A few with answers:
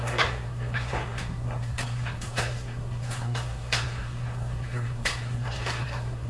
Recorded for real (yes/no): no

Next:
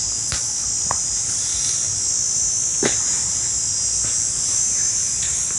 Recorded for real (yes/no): yes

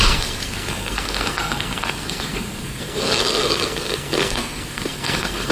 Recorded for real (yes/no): no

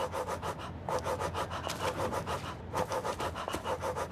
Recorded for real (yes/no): yes